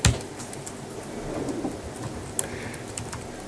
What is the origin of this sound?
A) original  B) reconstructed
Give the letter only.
A